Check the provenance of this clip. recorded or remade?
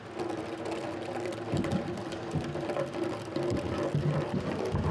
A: recorded